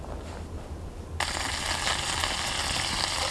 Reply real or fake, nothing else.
real